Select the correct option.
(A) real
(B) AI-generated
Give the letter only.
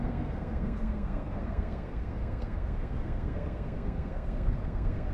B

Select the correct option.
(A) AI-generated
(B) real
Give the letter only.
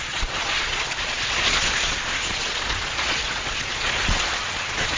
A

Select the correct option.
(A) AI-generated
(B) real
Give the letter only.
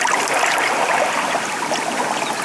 B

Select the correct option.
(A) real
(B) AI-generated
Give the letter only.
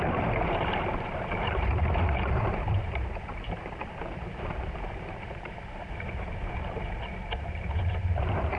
B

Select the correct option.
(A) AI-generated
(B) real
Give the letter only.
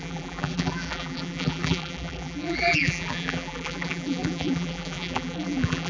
A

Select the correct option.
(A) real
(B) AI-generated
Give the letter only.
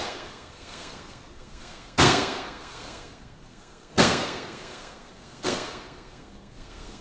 B